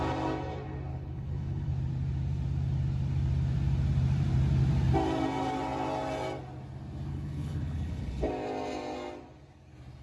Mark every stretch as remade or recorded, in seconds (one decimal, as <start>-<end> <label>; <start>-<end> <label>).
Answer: 0.0-0.9 recorded; 0.9-1.7 remade; 1.7-7.1 recorded; 7.1-8.3 remade; 8.3-10.0 recorded